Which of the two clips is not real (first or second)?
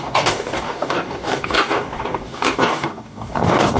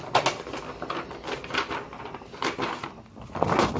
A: first